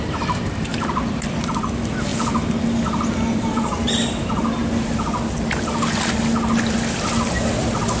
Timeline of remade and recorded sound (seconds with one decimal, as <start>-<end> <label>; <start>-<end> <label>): 0.0-8.0 recorded